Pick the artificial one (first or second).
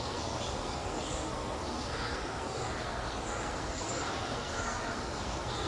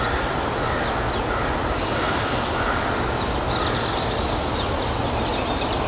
first